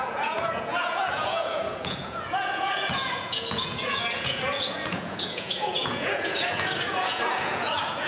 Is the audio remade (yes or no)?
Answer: yes